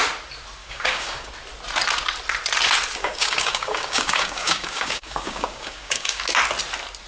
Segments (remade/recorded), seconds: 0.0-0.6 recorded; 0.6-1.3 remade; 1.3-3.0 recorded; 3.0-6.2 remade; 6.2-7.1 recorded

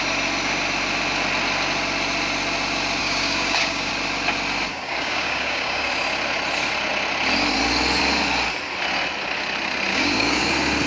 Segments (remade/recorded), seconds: 0.0-3.0 recorded; 3.0-3.9 remade; 3.9-4.7 recorded; 4.7-5.9 remade; 5.9-9.9 recorded; 9.9-10.5 remade; 10.5-10.9 recorded